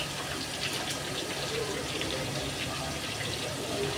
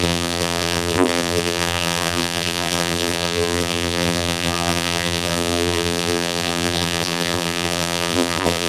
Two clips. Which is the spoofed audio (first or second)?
second